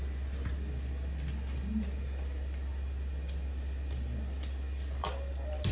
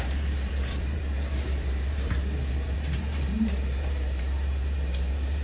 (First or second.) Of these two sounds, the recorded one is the first